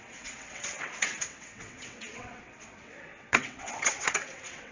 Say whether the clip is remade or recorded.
remade